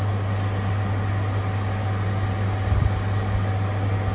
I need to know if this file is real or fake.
real